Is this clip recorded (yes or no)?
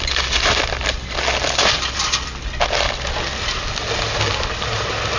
yes